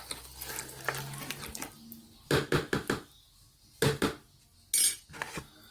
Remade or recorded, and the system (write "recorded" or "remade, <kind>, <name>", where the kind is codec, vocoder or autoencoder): recorded